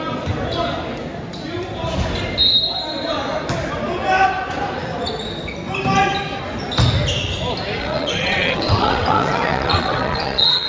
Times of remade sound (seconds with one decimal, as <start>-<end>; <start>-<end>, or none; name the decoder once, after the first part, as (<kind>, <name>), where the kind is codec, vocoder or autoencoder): 7.8-10.7 (vocoder, WaveNeXt)